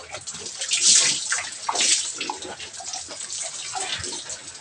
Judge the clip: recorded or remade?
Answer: recorded